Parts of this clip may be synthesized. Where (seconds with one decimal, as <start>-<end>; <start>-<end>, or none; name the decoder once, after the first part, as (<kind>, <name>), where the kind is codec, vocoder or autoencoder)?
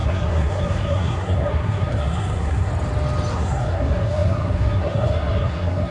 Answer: 0.0-2.7 (codec, SNAC); 3.3-5.9